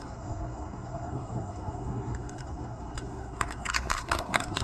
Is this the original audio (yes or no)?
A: no